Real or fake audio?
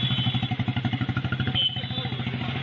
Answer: real